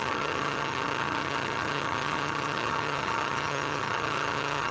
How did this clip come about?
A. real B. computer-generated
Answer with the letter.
B